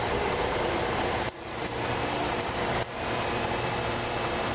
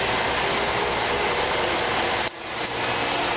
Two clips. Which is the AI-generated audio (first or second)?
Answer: first